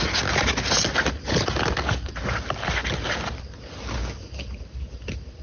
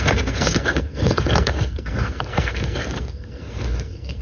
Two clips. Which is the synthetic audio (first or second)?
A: second